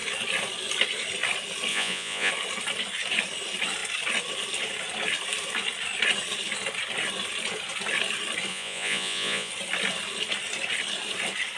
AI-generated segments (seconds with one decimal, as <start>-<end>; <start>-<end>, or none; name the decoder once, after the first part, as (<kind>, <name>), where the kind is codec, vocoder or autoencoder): 1.7-2.3 (vocoder, Vocos); 8.5-9.5